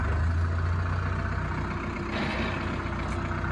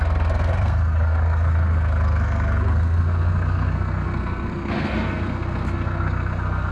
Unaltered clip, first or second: first